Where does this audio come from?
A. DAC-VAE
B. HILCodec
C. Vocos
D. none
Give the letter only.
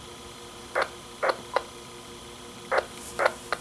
D